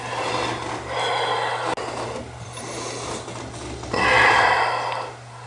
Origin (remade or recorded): recorded